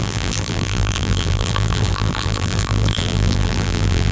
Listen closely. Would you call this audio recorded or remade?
remade